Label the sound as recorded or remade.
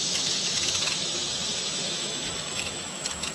remade